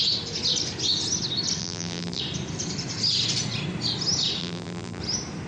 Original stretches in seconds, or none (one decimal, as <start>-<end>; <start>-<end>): 0.0-1.6; 2.2-4.4; 5.0-5.5